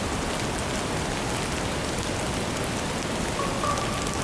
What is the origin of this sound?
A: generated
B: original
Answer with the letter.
B